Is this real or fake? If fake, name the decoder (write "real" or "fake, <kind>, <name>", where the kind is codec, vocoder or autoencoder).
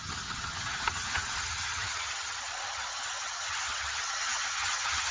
fake, vocoder, HiFi-GAN